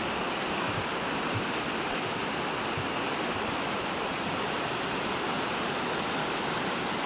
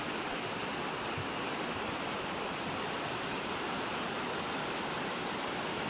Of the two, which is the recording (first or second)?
first